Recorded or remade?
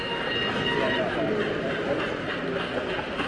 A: recorded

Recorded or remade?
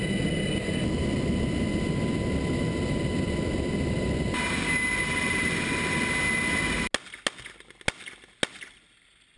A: recorded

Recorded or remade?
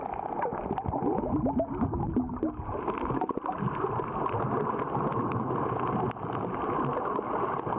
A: recorded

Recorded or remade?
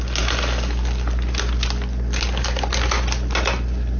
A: recorded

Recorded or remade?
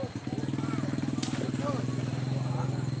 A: recorded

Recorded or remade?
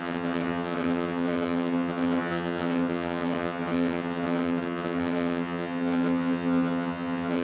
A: remade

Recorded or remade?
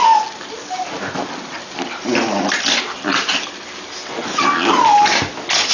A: recorded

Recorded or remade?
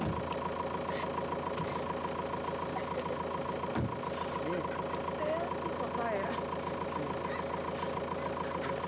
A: recorded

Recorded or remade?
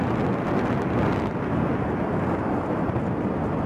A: recorded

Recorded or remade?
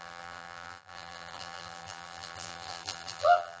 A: remade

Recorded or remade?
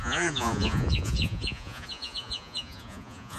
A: remade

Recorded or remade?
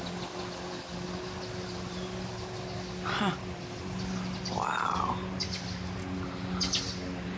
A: recorded